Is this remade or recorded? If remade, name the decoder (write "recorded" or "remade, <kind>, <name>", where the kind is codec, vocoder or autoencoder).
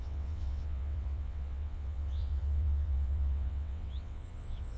remade, vocoder, WaveNeXt